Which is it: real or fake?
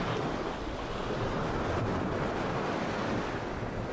real